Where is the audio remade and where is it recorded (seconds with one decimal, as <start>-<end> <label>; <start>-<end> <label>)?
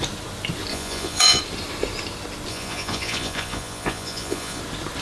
0.0-0.7 recorded; 0.7-1.4 remade; 1.4-2.5 recorded; 2.5-4.6 remade; 4.6-5.0 recorded